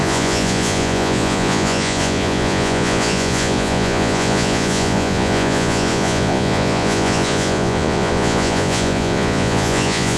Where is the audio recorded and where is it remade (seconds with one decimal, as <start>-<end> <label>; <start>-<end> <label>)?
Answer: 0.0-10.2 remade